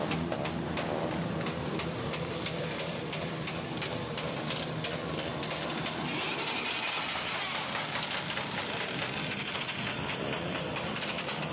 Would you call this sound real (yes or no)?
yes